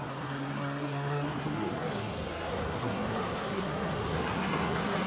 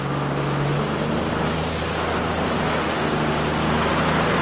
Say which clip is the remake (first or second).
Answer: first